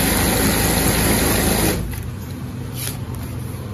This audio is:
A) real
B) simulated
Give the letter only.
A